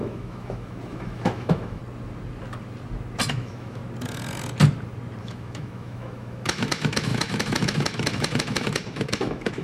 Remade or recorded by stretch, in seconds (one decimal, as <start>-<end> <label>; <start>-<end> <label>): 0.0-1.8 remade; 1.8-3.3 recorded; 3.3-3.8 remade; 3.8-5.2 recorded; 5.2-9.6 remade